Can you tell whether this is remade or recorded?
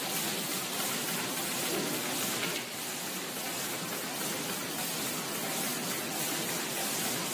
recorded